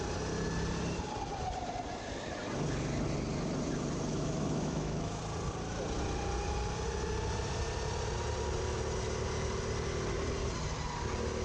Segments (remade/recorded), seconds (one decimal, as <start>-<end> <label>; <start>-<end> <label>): 0.0-4.1 recorded; 4.1-5.2 remade; 5.2-11.4 recorded